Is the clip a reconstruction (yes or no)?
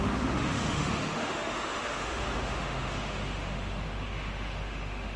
yes